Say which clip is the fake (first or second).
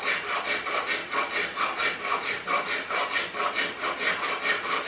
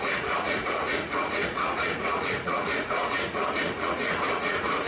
second